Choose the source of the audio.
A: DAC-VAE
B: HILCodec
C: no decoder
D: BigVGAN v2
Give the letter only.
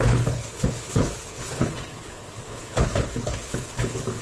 B